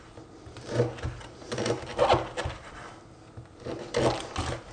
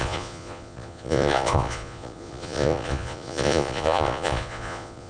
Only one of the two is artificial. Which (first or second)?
second